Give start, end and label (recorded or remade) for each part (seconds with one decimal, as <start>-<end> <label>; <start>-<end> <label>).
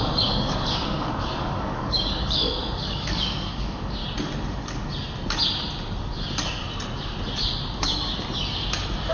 0.0-4.0 remade; 4.0-9.1 recorded